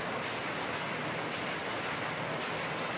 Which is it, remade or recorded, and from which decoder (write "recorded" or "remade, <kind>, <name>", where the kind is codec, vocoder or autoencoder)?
recorded